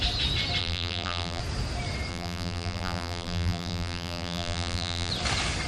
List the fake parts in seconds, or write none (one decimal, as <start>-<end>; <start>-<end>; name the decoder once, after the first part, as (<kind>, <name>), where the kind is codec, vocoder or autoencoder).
0.6-1.4 (vocoder, BigVGAN v2); 2.1-5.1